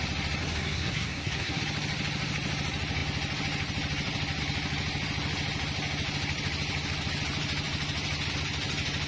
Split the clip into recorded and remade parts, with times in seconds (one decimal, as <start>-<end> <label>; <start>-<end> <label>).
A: 0.0-0.4 recorded; 0.4-1.6 remade; 1.6-9.1 recorded